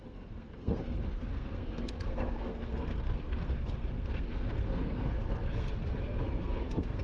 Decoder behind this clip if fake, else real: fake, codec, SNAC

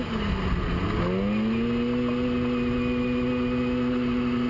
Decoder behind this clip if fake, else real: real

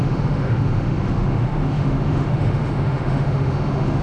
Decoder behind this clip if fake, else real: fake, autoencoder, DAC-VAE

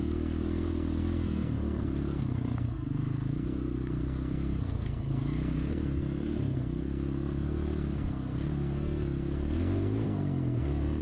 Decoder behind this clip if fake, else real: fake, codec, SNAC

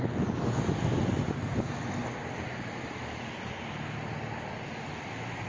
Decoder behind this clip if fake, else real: real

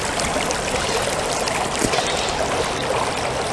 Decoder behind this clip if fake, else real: real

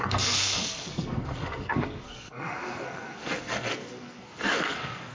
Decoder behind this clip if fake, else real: fake, codec, SNAC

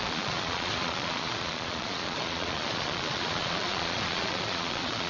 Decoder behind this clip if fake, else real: fake, vocoder, Vocos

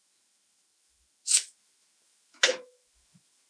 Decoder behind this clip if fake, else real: fake, autoencoder, DAC-VAE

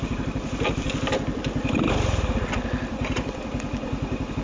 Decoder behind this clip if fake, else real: real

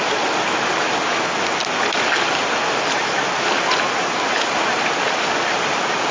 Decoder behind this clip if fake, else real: real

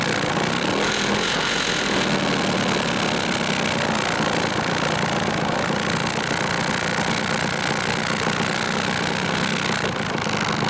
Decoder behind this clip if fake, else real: real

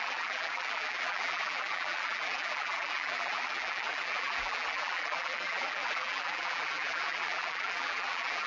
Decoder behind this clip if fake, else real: fake, vocoder, BigVGAN v2